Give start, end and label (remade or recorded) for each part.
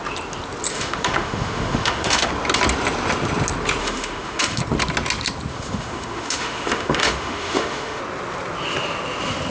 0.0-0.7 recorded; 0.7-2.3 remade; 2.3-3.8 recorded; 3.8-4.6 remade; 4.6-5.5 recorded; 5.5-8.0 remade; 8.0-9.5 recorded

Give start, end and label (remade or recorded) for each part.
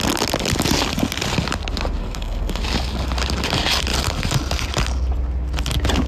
0.0-2.0 recorded; 2.0-2.6 remade; 2.6-6.1 recorded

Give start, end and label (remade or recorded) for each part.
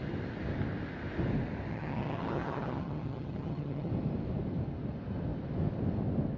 0.0-1.7 recorded; 1.7-3.9 remade; 3.9-6.4 recorded